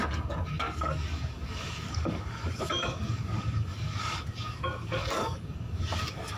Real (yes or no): no